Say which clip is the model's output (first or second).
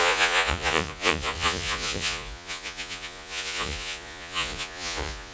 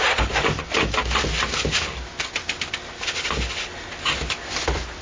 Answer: first